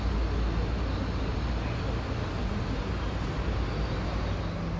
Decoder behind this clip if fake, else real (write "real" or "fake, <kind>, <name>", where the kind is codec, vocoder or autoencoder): real